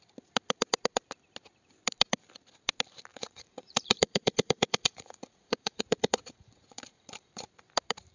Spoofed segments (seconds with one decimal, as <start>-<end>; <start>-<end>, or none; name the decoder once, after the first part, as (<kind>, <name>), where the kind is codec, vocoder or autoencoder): 3.1-7.5 (vocoder, Vocos)